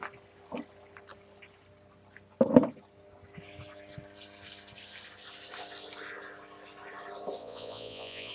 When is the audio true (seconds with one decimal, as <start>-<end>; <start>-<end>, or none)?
0.0-7.4